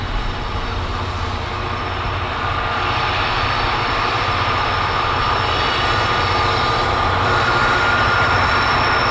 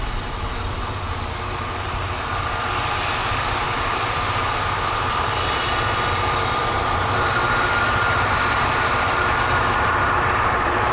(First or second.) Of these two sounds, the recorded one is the first